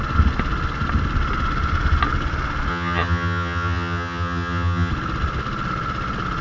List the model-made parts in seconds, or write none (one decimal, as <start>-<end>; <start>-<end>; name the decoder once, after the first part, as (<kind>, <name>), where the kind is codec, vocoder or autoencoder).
2.7-4.9 (vocoder, HiFi-GAN)